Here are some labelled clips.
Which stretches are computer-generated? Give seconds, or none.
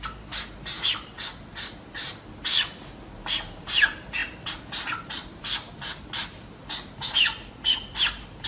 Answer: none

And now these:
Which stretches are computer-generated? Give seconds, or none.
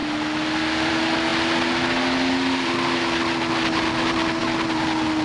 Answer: none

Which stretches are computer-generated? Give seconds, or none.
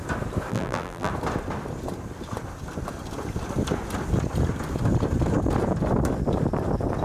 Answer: 0.5-1.1